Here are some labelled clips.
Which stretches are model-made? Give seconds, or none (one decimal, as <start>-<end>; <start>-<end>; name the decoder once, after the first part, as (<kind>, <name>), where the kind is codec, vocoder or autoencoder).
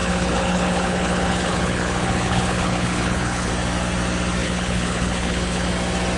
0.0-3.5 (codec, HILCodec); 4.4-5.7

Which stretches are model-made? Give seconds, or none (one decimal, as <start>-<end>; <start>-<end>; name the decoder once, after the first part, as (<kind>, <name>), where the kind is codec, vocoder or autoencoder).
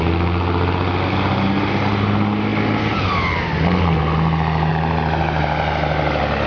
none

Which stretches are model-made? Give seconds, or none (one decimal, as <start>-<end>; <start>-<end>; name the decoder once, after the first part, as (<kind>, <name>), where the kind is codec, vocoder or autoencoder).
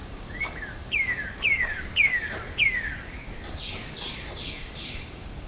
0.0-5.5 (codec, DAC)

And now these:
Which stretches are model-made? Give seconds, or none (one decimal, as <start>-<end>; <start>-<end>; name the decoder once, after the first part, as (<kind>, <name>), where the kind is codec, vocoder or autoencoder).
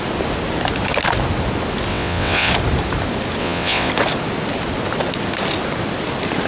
1.9-2.5 (vocoder, WaveNeXt); 3.4-3.9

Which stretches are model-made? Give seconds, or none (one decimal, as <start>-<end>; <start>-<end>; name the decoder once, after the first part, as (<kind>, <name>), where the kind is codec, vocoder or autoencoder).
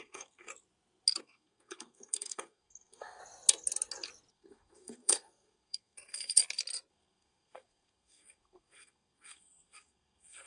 0.0-0.5 (codec, SNAC); 1.2-3.2; 4.3-6.4; 6.9-10.5